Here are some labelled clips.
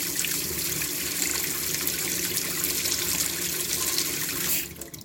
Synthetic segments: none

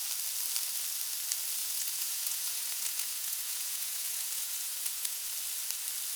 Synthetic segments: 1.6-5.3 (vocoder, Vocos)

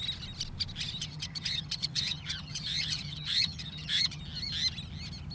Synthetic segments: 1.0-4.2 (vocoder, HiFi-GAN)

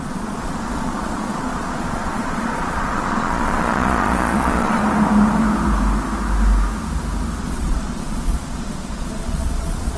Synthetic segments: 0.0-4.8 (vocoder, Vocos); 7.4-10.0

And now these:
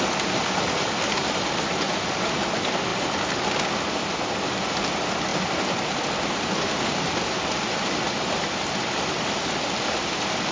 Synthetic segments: none

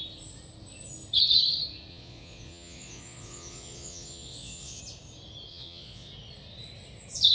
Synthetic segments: 1.9-4.8 (vocoder, Vocos); 5.5-6.1

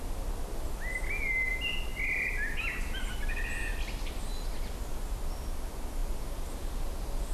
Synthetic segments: none